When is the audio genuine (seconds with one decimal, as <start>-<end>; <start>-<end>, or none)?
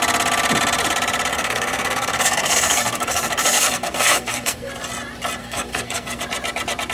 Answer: 0.0-1.3; 4.7-5.4; 6.2-6.9